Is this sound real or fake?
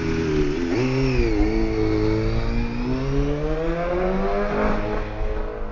real